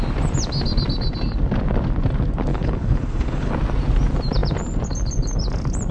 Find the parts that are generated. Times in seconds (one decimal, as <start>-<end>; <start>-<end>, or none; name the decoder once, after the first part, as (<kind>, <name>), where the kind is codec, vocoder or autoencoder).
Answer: 2.5-3.5 (codec, HILCodec)